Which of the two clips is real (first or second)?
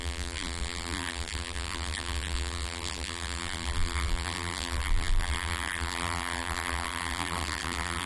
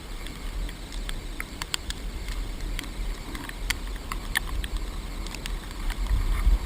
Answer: second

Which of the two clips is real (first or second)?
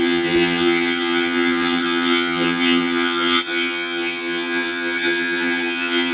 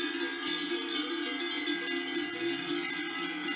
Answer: second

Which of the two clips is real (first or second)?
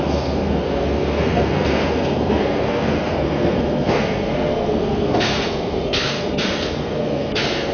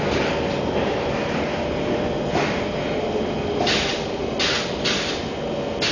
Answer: second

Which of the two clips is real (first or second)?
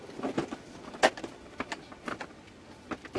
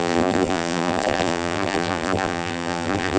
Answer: first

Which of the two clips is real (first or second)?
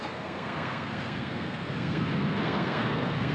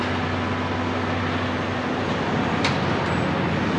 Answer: second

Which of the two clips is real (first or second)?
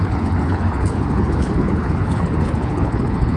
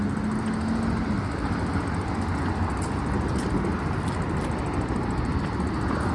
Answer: second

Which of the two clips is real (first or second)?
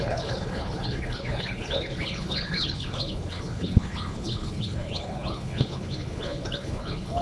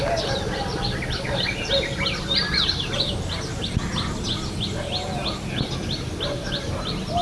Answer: second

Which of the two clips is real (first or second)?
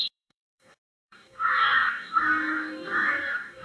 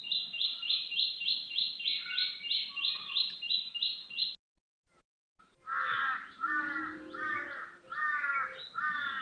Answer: second